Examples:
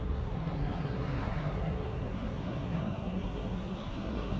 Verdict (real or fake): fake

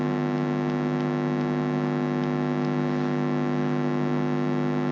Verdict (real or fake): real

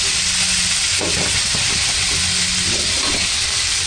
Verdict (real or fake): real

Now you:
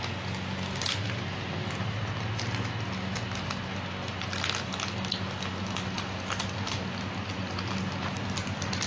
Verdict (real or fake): real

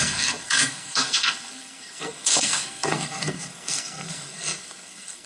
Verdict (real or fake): fake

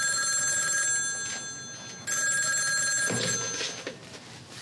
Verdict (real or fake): real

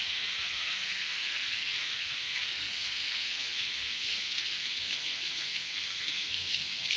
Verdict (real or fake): fake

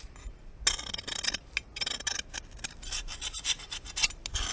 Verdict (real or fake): real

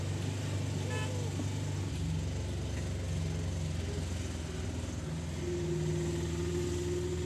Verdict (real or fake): real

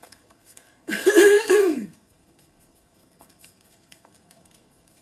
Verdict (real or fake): fake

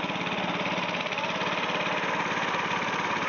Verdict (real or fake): real